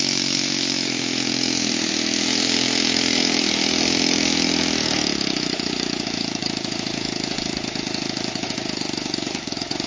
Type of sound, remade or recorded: remade